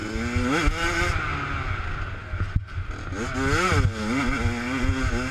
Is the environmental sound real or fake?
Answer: real